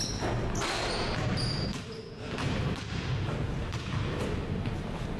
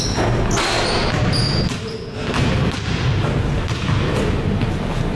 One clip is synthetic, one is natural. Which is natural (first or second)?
second